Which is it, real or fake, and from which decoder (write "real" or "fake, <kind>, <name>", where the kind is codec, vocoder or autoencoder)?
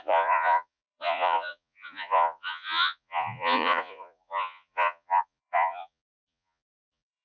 fake, vocoder, Vocos